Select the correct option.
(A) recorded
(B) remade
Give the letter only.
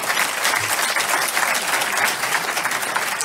A